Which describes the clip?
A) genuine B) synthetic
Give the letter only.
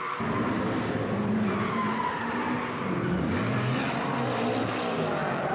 A